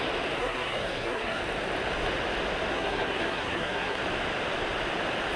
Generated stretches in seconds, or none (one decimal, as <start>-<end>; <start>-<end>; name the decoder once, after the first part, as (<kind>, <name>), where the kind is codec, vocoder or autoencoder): 0.4-1.4 (codec, SNAC); 2.7-4.0